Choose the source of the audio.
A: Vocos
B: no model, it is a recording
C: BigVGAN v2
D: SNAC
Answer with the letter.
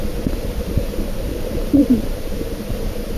C